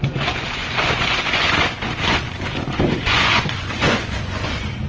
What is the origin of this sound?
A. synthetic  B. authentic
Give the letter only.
A